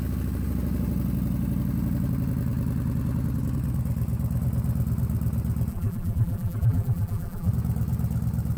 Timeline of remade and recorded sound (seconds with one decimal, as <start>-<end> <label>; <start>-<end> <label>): 0.0-5.7 recorded; 5.7-7.5 remade; 7.5-8.6 recorded